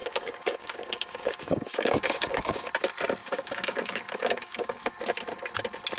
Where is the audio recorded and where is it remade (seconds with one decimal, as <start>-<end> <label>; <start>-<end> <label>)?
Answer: 0.0-2.7 remade; 2.7-3.2 recorded; 3.2-4.9 remade; 4.9-6.0 recorded